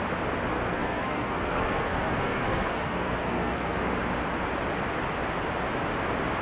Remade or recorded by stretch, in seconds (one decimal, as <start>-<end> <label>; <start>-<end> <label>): 0.0-0.5 recorded; 0.5-3.9 remade; 3.9-6.4 recorded